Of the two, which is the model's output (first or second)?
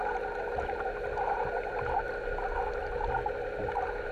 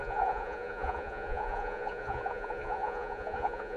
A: second